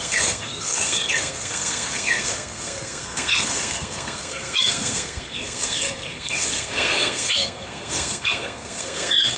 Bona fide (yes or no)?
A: no